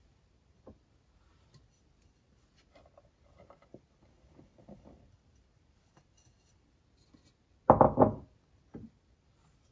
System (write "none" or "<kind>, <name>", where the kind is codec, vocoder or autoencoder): none